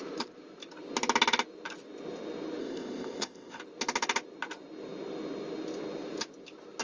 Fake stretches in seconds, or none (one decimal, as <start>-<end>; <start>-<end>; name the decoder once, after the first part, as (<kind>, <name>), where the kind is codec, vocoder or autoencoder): 2.6-3.6 (codec, ZipCodec)